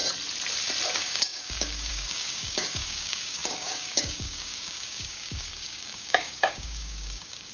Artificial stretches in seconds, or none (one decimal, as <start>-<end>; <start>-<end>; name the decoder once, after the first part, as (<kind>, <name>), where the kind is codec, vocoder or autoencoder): 0.9-7.5 (codec, DAC)